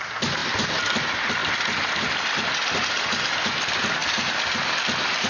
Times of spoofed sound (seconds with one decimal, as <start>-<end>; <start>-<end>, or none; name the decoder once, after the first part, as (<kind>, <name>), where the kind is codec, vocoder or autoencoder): 0.4-1.0 (vocoder, BigVGAN v2); 1.4-3.1; 4.0-5.3